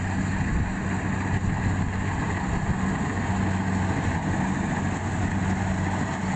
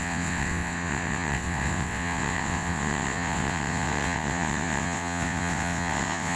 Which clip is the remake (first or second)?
second